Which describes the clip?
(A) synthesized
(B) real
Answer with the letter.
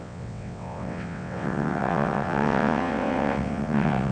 A